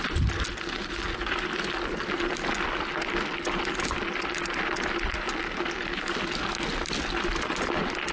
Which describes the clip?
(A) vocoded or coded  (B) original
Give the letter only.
B